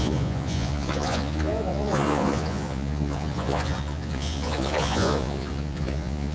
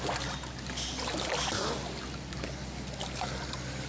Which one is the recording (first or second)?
second